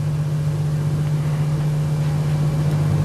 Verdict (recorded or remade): recorded